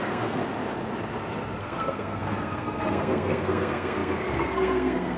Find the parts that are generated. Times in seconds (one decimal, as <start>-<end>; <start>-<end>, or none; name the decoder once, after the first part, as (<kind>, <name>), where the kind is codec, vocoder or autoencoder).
0.0-0.4 (codec, SNAC); 1.6-5.2